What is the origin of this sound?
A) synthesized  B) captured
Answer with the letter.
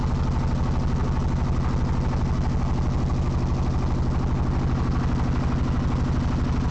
B